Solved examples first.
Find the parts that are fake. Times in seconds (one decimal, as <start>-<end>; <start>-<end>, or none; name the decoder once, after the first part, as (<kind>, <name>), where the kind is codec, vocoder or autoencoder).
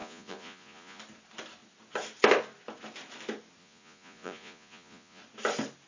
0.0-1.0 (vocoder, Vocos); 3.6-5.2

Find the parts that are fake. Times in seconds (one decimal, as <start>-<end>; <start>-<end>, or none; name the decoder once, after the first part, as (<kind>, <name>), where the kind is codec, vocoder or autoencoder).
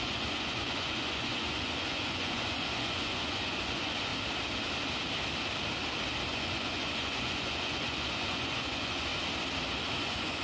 0.0-4.1 (vocoder, Vocos); 6.3-9.1; 10.0-10.4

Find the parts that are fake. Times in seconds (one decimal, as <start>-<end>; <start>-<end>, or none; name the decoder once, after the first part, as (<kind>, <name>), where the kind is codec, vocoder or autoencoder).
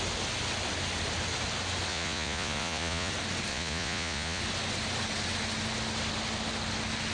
1.9-3.1 (vocoder, Vocos); 3.5-4.4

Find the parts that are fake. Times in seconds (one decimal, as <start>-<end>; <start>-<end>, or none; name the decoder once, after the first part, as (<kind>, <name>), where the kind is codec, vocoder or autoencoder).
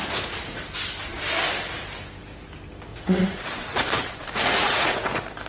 0.0-0.6 (vocoder, Vocos); 2.9-5.1